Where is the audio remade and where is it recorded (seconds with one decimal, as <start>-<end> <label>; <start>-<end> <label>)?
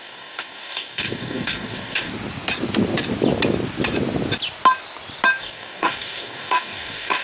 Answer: 0.0-2.1 remade; 2.1-5.4 recorded; 5.4-7.2 remade